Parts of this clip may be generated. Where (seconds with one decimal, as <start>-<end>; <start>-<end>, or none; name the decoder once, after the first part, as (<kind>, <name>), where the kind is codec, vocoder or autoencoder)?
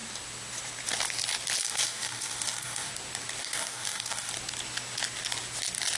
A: 1.6-2.9 (codec, DAC); 3.4-4.3